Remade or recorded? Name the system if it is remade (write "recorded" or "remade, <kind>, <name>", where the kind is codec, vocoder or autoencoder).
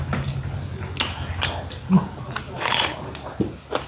recorded